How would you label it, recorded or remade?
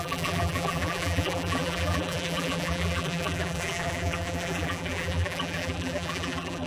remade